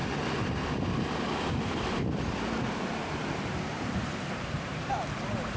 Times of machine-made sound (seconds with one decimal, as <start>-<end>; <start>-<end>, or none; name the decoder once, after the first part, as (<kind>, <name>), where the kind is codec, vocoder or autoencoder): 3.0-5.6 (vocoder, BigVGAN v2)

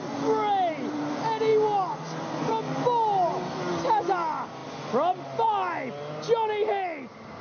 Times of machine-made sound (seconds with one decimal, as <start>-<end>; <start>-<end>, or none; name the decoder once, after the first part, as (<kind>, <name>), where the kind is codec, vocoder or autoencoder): none

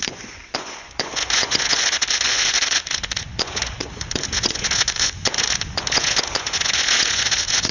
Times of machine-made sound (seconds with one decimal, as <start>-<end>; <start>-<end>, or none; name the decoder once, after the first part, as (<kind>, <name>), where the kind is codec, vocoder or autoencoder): 0.0-7.7 (vocoder, Vocos)

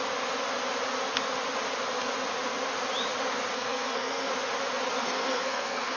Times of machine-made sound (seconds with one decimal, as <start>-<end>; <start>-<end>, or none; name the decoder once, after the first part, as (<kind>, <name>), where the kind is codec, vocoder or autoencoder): 3.5-4.3 (codec, SNAC); 5.0-6.0

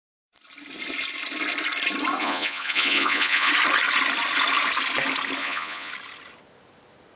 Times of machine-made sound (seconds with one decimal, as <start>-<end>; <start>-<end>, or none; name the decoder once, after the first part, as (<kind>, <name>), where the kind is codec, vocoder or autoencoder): 2.2-3.5 (vocoder, Vocos); 5.4-5.9